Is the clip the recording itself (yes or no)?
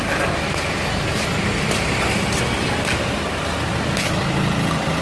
yes